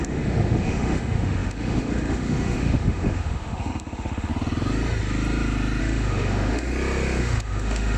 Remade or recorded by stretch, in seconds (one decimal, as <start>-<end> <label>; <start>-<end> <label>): 0.0-4.3 remade; 4.3-5.8 recorded; 5.8-6.7 remade; 6.7-7.2 recorded; 7.2-8.0 remade